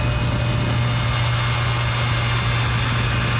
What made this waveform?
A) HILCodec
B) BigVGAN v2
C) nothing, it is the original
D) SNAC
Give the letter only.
C